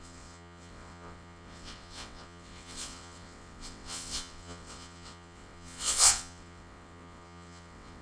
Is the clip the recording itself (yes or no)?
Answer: no